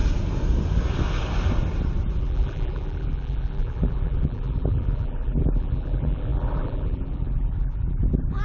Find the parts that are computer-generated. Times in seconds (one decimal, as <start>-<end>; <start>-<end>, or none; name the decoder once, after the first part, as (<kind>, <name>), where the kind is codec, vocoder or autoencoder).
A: 2.2-8.4 (vocoder, BigVGAN v2)

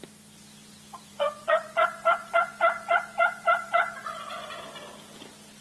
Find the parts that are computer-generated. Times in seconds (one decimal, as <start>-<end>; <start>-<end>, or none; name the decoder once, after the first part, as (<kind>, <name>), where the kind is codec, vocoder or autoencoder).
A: 1.1-4.5 (vocoder, Vocos)

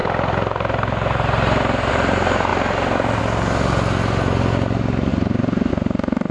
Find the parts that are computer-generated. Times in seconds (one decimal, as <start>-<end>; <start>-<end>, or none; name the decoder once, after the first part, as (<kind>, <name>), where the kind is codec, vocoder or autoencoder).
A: none